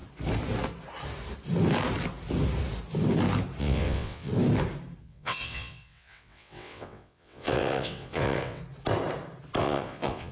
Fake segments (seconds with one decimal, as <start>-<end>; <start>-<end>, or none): 3.6-4.3; 5.0-8.6; 9.6-10.3